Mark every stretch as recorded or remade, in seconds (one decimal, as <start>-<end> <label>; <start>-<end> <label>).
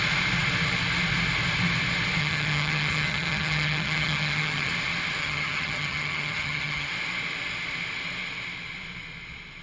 0.0-2.2 recorded; 2.2-4.7 remade; 4.7-5.2 recorded; 5.2-6.9 remade; 6.9-9.6 recorded